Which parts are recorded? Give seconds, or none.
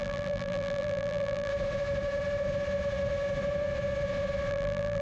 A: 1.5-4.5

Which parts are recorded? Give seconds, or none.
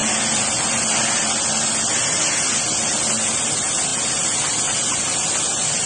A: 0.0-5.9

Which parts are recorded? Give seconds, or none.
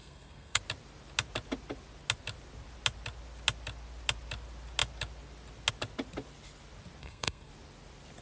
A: 0.6-7.0; 7.5-8.2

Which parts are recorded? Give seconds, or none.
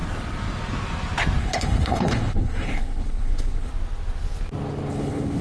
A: 0.0-1.4; 3.7-4.9